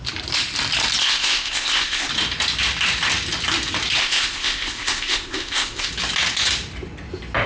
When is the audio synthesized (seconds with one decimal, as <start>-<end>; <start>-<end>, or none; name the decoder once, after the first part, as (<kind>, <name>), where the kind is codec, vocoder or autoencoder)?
1.0-2.1 (codec, ZipCodec); 4.0-5.9